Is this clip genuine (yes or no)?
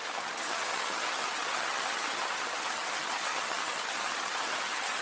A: no